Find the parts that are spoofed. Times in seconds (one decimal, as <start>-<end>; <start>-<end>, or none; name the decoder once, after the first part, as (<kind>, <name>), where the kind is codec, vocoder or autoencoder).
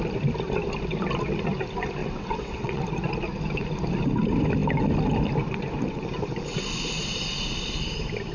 2.0-2.8 (vocoder, WaveNeXt)